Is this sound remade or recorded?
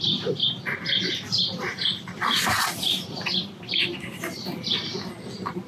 remade